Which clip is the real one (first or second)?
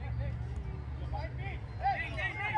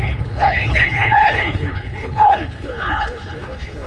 first